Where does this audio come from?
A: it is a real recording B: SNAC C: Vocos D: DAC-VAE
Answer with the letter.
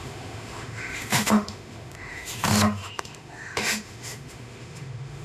D